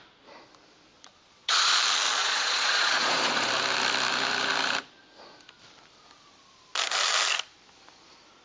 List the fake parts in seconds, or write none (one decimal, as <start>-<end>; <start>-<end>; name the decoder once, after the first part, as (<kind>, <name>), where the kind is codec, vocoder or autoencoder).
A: 0.9-1.7 (vocoder, Vocos); 2.2-3.5